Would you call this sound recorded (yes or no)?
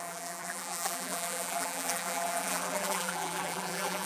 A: no